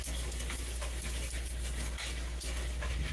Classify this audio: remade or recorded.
recorded